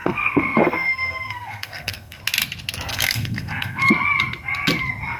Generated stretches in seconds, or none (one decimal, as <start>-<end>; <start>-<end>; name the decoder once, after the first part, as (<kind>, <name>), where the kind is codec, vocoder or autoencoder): 0.0-2.2 (codec, SNAC); 2.9-3.9